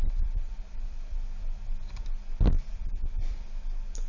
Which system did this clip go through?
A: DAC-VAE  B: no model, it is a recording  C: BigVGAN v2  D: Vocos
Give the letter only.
C